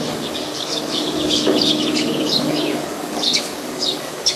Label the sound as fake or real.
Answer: fake